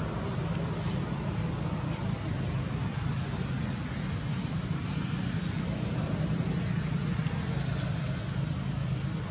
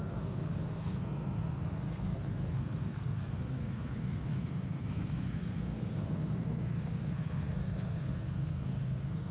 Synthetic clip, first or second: second